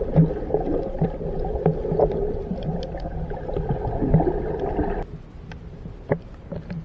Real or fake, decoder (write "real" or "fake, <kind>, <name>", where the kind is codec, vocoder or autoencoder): real